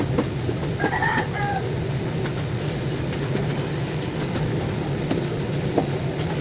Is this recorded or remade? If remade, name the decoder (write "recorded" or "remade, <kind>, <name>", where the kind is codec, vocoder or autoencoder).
recorded